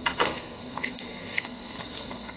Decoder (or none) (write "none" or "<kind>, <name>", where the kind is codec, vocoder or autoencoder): codec, SNAC